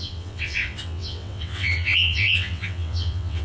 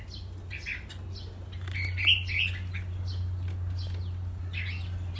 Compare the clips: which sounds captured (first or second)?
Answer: second